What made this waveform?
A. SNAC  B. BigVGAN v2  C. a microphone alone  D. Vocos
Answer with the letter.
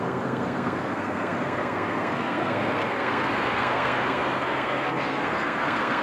A